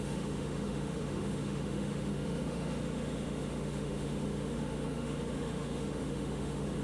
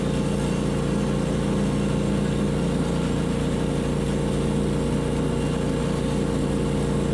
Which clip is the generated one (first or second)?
first